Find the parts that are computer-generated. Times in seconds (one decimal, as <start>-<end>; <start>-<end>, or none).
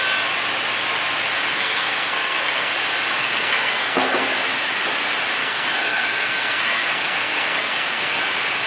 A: 1.5-2.7; 3.2-4.4; 5.4-8.2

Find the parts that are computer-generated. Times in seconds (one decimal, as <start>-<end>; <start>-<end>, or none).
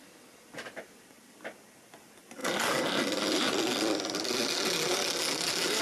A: none